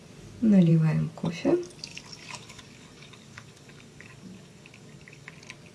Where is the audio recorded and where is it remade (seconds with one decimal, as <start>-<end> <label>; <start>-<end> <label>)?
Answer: 0.0-1.9 recorded; 1.9-5.3 remade; 5.3-5.7 recorded